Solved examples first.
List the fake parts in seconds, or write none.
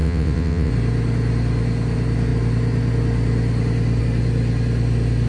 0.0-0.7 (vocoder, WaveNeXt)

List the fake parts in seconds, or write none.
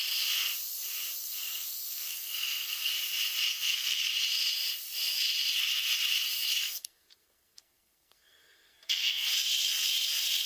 1.2-2.9 (codec, SNAC); 3.5-4.0; 6.6-9.3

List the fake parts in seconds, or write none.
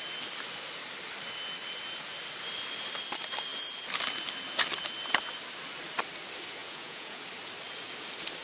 6.6-7.2 (vocoder, Vocos)